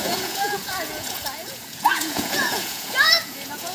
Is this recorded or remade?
remade